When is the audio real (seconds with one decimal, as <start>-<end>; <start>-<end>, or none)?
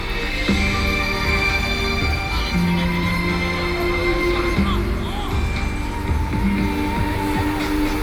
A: 0.0-8.0